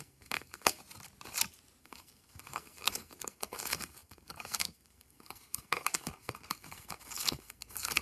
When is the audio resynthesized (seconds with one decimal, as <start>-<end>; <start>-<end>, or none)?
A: 0.0-0.8; 1.8-8.0